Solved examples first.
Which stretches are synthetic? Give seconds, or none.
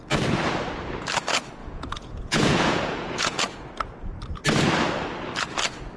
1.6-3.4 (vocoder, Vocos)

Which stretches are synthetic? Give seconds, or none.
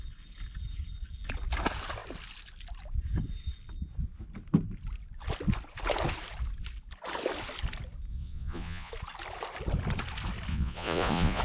8.1-8.9 (vocoder, Vocos); 10.5-11.4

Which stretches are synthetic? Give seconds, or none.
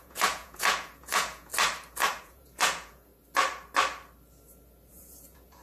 0.0-1.5 (vocoder, Vocos); 2.2-3.1; 4.9-5.6